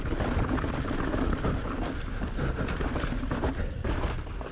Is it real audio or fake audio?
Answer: real